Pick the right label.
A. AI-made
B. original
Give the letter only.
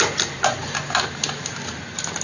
B